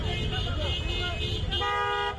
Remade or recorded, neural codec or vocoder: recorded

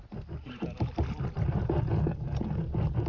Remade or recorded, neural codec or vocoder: recorded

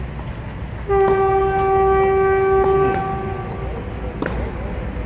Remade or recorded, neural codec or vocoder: recorded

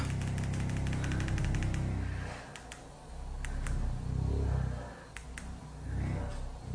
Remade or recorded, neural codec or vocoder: recorded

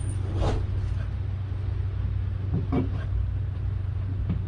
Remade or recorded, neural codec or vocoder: recorded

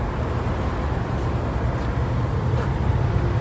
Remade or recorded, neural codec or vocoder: recorded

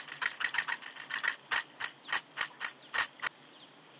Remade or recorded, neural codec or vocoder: recorded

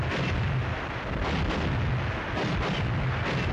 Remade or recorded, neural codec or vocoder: recorded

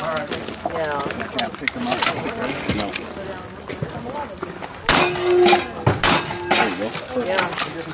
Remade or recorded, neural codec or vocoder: recorded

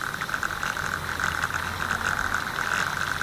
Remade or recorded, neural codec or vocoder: recorded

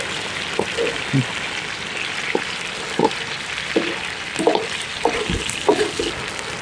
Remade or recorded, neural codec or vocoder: recorded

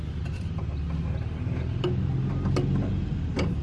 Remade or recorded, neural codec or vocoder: recorded